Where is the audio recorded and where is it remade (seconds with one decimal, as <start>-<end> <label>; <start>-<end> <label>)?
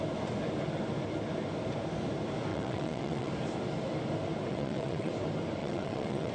0.0-2.5 recorded; 2.5-3.3 remade; 3.3-4.5 recorded; 4.5-5.1 remade; 5.1-5.6 recorded; 5.6-6.3 remade